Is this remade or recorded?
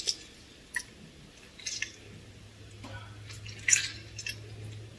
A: recorded